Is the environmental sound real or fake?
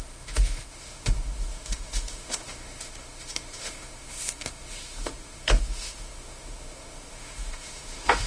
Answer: fake